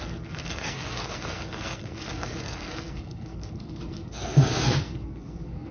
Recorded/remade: remade